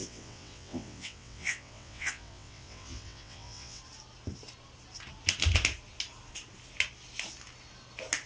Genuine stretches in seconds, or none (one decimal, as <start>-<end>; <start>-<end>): 3.8-8.3